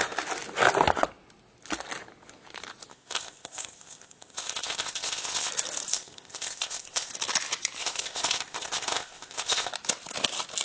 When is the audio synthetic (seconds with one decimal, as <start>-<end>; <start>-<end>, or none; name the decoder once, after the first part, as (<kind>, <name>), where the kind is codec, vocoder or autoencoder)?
2.9-5.5 (codec, ZipCodec); 5.9-7.1; 7.8-9.7